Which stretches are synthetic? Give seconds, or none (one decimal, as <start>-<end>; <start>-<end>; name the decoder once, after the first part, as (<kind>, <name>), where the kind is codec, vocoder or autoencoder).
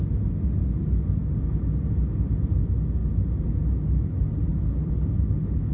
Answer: 4.5-5.7 (codec, HILCodec)